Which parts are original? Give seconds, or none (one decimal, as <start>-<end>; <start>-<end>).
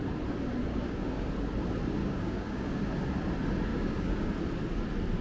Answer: 0.0-0.7; 1.3-2.0; 2.8-3.7; 4.3-5.2